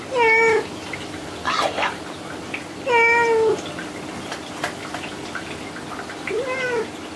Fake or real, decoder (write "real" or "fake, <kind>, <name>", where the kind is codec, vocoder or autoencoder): real